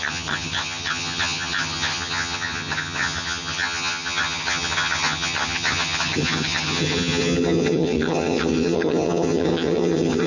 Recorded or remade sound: remade